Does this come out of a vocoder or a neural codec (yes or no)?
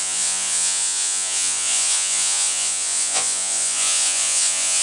yes